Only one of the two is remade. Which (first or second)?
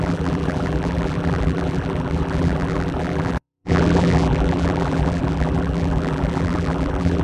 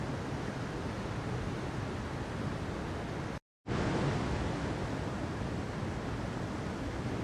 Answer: first